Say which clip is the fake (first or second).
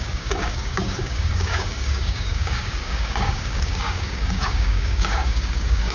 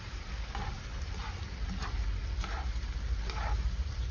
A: first